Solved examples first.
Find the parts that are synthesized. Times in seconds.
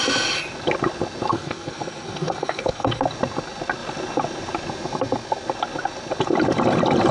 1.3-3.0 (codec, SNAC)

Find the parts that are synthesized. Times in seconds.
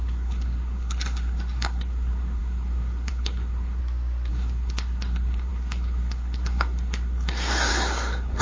0.0-3.8 (codec, SNAC); 4.3-8.4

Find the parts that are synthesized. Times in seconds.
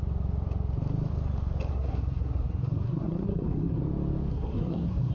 1.7-3.8 (codec, SNAC); 4.3-5.1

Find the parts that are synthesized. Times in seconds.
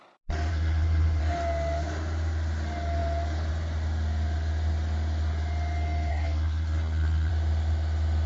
0.5-1.2 (codec, SNAC); 6.1-7.3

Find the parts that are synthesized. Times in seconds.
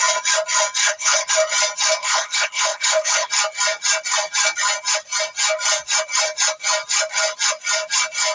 0.8-1.3 (codec, HILCodec); 2.0-3.3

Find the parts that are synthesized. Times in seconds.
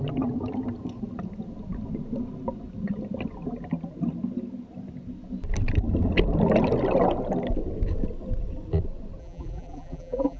9.2-10.4 (vocoder, BigVGAN v2)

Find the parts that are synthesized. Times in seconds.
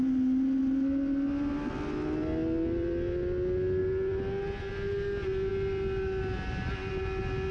none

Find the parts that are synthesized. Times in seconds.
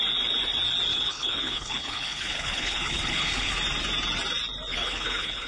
0.9-3.5 (codec, HILCodec); 4.7-5.5